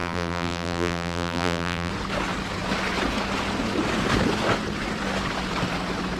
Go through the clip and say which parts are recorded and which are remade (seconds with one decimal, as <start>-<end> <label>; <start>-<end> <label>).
0.0-1.9 remade; 1.9-6.2 recorded